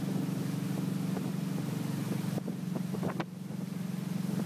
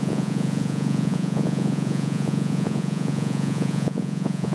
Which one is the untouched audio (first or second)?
first